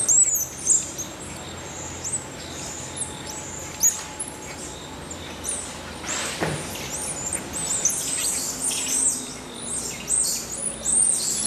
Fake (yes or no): no